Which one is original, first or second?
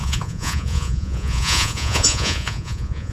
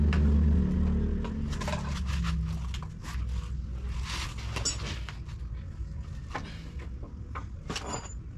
second